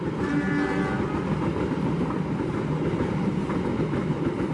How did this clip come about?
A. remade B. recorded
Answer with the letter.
B